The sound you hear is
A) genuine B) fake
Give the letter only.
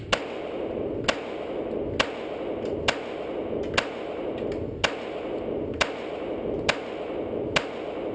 A